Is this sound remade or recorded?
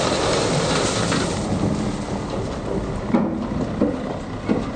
recorded